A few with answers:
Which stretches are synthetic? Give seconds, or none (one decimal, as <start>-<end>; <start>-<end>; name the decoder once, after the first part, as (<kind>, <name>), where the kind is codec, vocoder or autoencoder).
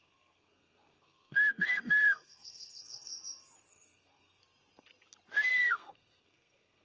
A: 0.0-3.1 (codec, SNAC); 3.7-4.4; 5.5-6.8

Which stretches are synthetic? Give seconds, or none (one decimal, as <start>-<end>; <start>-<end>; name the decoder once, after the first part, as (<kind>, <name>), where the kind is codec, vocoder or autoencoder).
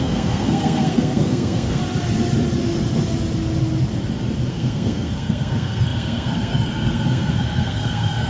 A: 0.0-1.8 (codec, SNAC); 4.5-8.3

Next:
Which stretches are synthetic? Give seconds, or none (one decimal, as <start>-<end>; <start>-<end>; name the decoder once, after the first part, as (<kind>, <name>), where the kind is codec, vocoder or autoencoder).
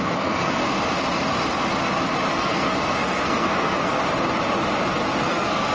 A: 0.0-0.6 (codec, SNAC); 2.3-4.0; 5.2-5.7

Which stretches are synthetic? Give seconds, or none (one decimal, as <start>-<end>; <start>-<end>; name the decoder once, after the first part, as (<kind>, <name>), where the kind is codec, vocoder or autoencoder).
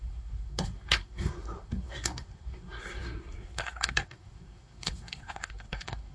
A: 0.0-6.1 (codec, SNAC)